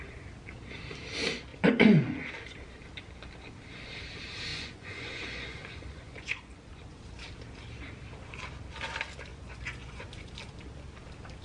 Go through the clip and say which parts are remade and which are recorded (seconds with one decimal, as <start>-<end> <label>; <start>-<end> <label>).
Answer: 0.0-1.5 recorded; 1.5-2.3 remade; 2.3-4.5 recorded; 4.5-7.0 remade; 7.0-9.3 recorded; 9.3-10.3 remade; 10.3-11.4 recorded